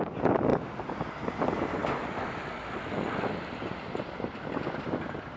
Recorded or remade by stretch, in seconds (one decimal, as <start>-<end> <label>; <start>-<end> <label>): 0.0-1.8 recorded; 1.8-5.0 remade; 5.0-5.4 recorded